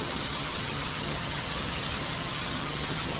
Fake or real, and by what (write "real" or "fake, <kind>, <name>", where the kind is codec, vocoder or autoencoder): fake, vocoder, HiFi-GAN